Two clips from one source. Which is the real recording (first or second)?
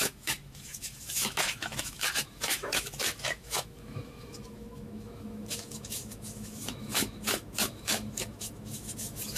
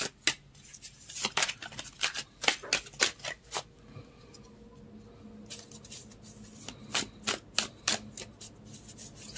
second